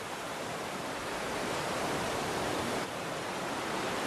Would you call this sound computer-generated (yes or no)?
yes